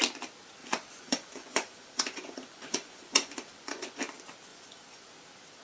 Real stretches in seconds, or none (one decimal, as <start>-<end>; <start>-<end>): 0.0-0.6; 4.0-4.5; 5.1-5.6